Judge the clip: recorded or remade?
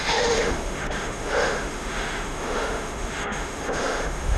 remade